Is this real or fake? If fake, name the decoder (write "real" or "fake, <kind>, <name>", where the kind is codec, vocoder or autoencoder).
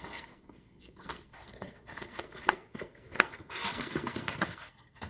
fake, codec, SNAC